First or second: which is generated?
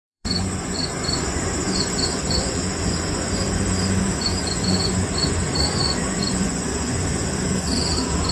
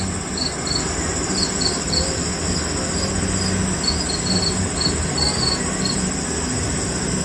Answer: first